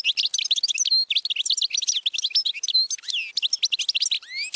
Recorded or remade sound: recorded